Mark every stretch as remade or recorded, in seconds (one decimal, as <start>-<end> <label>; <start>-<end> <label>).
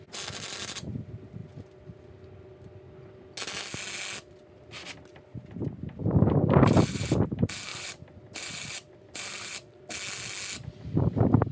0.0-6.0 recorded; 6.0-6.6 remade; 6.6-7.7 recorded; 7.7-9.7 remade; 9.7-11.5 recorded